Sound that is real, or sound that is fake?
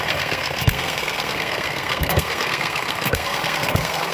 fake